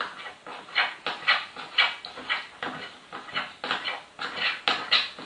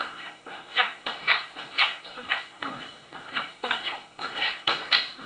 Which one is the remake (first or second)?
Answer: second